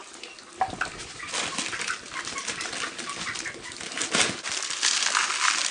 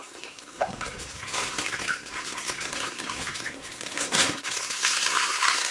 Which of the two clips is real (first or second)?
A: first